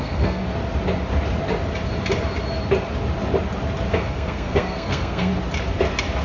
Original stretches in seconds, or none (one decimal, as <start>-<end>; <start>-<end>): 0.4-3.9; 5.3-6.2